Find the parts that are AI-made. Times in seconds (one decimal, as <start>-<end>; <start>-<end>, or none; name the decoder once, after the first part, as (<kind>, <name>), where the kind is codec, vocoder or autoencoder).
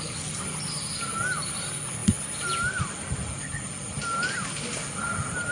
none